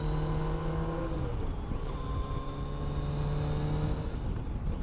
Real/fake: real